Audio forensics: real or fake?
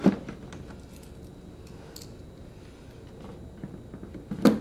real